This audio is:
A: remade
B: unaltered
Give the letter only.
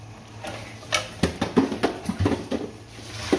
B